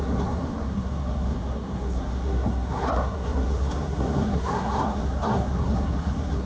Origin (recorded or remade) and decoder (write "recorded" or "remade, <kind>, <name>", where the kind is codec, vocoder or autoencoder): remade, codec, SNAC